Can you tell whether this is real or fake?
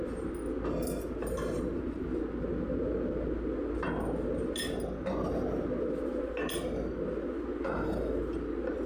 real